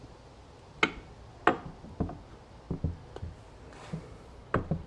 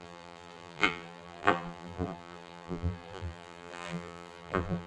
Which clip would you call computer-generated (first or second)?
second